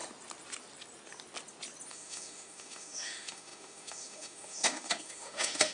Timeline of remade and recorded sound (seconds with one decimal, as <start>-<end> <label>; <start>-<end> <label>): 0.0-1.9 recorded; 1.9-5.7 remade